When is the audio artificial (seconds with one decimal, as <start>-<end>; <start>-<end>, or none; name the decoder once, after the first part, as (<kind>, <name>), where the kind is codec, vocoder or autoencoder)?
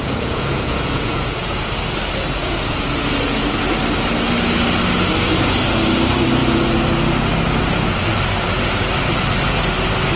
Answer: 0.0-1.7 (vocoder, Vocos); 2.4-3.6